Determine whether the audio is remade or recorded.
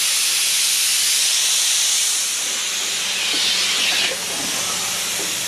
recorded